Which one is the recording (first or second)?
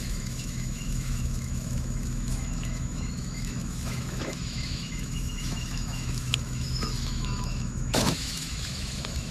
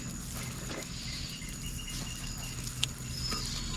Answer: second